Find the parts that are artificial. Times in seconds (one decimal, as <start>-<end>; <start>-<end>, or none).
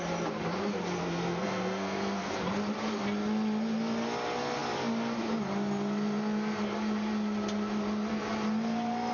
1.0-2.3